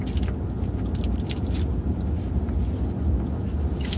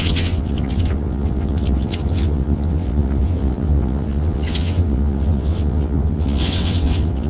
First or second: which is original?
first